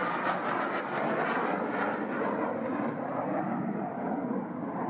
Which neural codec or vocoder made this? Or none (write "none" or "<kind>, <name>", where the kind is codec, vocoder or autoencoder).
none